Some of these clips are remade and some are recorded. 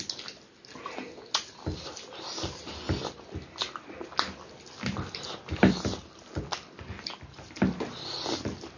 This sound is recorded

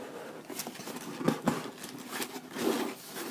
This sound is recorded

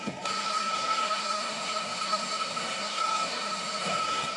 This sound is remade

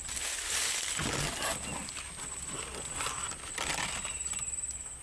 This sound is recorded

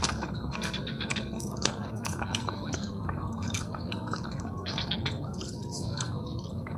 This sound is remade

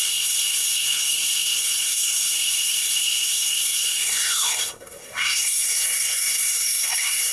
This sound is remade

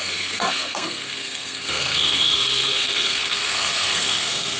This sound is remade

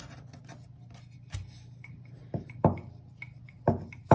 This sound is recorded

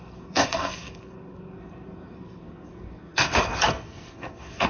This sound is remade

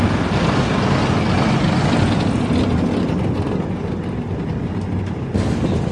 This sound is recorded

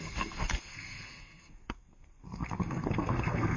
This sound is remade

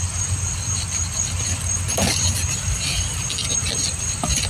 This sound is recorded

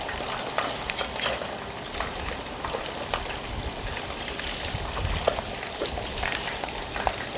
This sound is recorded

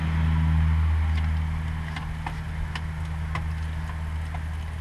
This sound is recorded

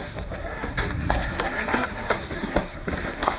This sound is remade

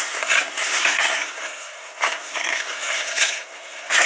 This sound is remade